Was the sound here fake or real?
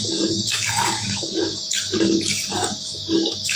fake